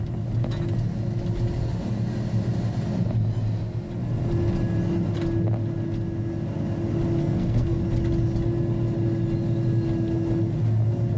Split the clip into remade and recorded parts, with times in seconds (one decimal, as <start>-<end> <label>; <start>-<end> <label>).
0.0-7.2 recorded; 7.2-7.8 remade; 7.8-11.2 recorded